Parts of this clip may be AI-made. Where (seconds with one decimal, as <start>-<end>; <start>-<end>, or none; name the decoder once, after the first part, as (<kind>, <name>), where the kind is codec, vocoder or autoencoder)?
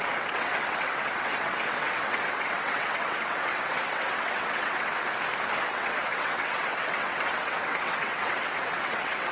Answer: 0.0-4.9 (vocoder, WaveNeXt); 5.7-9.3